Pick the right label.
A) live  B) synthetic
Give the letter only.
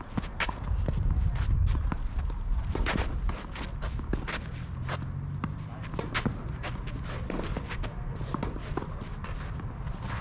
A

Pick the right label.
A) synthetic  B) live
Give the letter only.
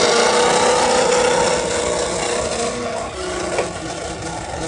B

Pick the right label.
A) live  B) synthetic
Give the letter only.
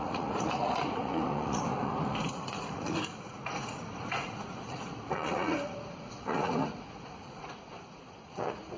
B